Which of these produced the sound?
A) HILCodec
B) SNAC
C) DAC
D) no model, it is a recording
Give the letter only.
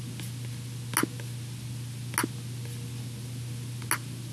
D